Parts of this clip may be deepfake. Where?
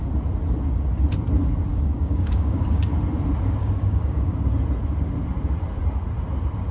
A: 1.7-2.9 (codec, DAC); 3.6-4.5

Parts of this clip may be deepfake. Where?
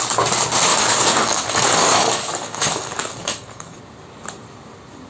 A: 0.7-3.8 (codec, DAC)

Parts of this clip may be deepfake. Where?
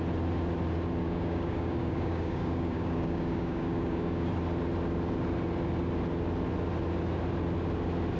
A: 1.0-4.3 (codec, DAC)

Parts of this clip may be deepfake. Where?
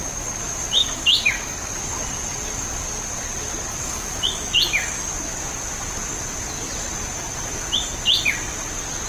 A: 0.8-1.7 (codec, DAC)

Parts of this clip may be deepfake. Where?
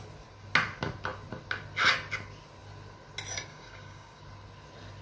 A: 3.5-4.2 (codec, DAC)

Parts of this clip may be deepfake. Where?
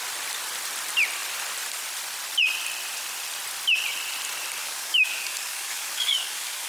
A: 4.6-6.7 (codec, DAC)